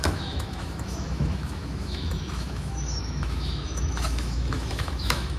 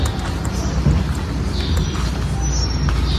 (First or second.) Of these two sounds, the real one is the second